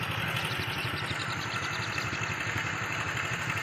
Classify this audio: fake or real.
real